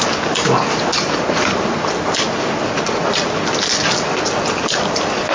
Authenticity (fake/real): real